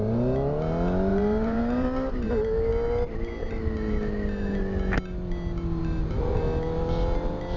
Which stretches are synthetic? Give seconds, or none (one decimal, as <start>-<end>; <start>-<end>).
1.1-2.3